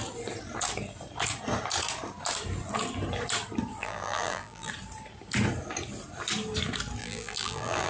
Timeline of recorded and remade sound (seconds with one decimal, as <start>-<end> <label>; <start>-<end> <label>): 0.0-3.8 recorded; 3.8-4.7 remade; 4.7-7.0 recorded; 7.0-7.9 remade